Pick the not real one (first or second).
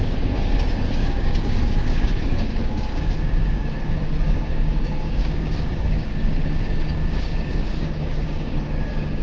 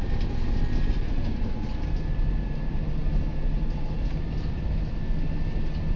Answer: first